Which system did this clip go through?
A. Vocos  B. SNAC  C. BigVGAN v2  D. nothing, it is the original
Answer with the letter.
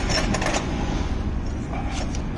A